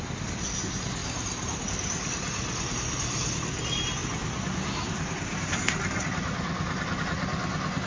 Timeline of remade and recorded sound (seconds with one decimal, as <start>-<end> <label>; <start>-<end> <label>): 0.0-1.0 recorded; 1.0-1.6 remade; 1.6-4.0 recorded; 4.0-7.0 remade; 7.0-7.9 recorded